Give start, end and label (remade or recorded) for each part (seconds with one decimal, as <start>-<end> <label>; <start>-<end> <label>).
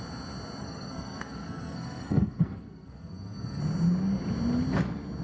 0.0-0.6 recorded; 0.6-3.6 remade; 3.6-5.2 recorded